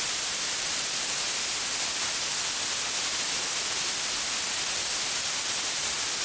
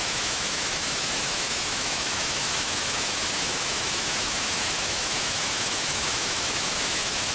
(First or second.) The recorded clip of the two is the first